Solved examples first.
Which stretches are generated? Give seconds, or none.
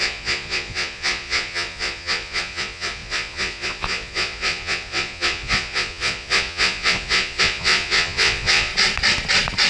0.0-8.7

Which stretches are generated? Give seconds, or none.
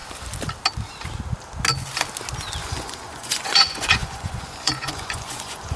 2.6-5.8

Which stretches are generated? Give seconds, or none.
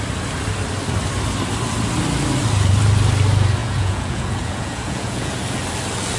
3.6-5.3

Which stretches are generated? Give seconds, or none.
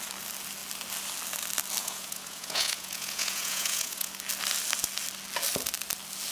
1.8-4.1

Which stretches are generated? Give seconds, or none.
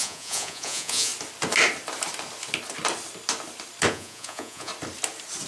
0.0-1.1; 3.9-4.7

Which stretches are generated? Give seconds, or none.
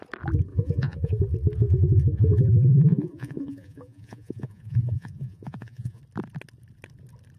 0.5-1.2; 1.6-6.0